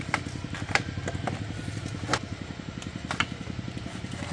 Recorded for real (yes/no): yes